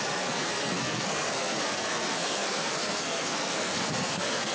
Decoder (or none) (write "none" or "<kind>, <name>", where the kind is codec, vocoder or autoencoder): codec, SNAC